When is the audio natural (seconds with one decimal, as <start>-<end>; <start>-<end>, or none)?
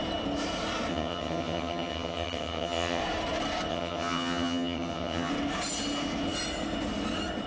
0.0-0.9; 3.0-3.7; 5.3-7.5